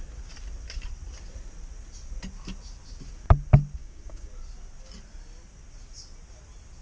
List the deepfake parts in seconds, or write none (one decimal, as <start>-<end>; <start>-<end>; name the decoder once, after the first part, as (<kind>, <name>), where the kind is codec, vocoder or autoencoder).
3.8-4.3 (codec, DAC)